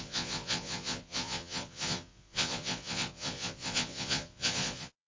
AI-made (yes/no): yes